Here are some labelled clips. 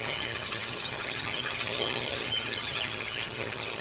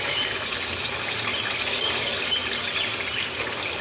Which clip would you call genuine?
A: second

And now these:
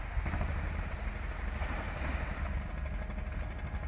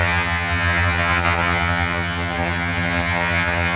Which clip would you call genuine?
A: first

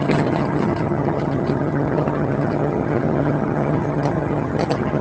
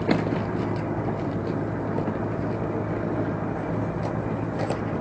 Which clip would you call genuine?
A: second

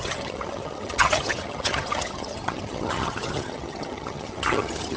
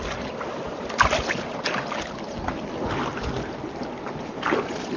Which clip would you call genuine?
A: second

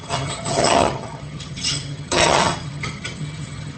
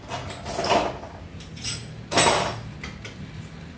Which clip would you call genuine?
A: second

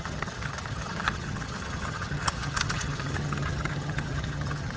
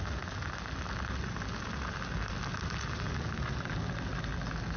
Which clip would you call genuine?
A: second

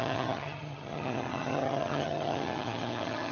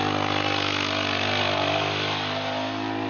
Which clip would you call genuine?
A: second